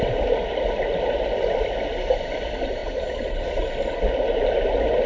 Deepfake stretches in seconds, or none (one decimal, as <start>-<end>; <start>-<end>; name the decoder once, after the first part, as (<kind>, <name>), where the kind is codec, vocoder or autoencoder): 2.8-3.6 (vocoder, Vocos)